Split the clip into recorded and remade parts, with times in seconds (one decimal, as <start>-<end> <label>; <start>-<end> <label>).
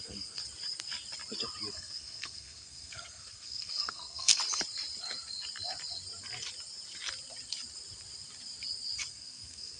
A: 0.0-0.4 remade; 0.4-1.7 recorded; 1.7-4.4 remade; 4.4-9.1 recorded; 9.1-9.8 remade